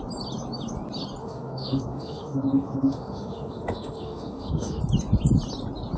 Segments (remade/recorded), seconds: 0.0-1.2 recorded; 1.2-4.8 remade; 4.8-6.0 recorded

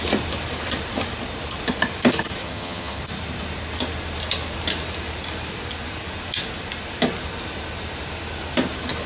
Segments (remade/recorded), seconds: 0.0-2.4 recorded; 2.4-3.0 remade; 3.0-9.1 recorded

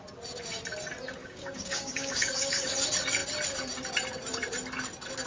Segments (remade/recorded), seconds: 0.0-1.2 recorded; 1.2-2.7 remade; 2.7-5.3 recorded

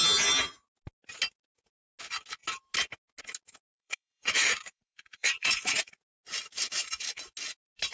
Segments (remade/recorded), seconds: 0.0-3.7 recorded; 3.7-5.9 remade; 5.9-7.9 recorded